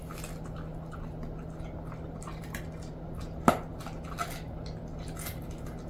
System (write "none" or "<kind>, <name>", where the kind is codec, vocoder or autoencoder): none